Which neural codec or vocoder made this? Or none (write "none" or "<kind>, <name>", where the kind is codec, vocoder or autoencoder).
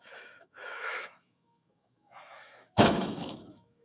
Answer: autoencoder, DAC-VAE